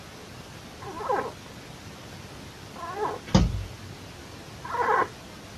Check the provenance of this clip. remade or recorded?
recorded